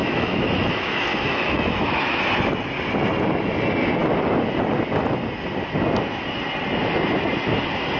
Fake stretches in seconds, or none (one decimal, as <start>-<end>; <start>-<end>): 0.0-2.2